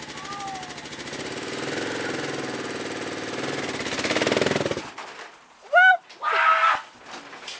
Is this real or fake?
real